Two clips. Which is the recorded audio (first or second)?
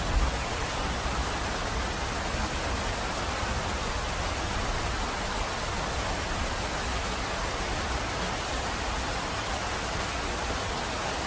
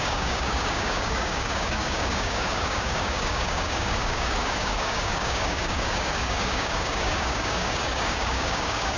first